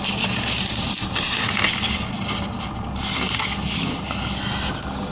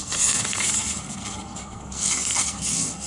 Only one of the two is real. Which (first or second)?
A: first